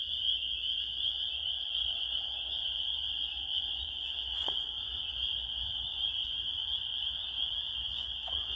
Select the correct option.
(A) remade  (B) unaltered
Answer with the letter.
A